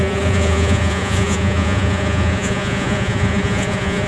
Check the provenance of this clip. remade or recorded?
remade